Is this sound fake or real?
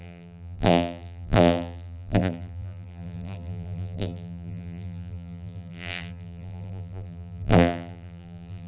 fake